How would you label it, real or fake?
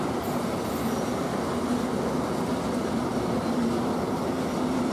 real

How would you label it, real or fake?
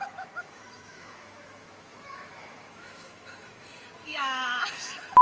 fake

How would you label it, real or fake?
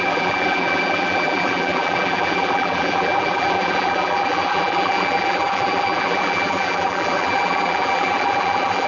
fake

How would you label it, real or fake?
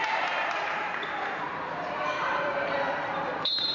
fake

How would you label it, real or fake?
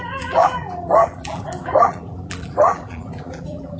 fake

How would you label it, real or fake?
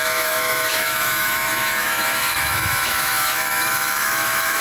fake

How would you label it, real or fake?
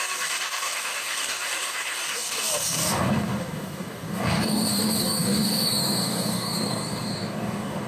fake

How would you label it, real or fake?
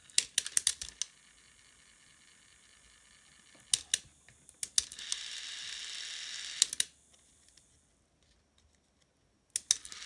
real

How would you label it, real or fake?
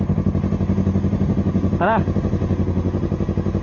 real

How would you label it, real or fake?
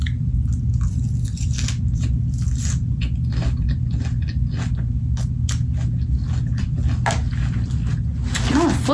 real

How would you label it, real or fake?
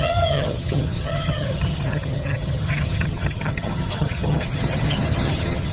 fake